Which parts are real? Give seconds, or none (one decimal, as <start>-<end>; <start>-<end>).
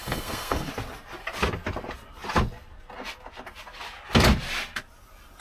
0.7-5.4